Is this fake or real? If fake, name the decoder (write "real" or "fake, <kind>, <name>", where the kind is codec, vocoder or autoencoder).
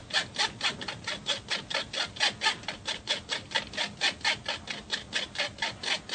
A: real